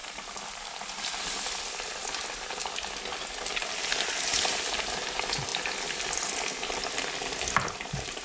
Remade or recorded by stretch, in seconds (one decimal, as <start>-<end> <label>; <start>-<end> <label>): 0.0-8.2 recorded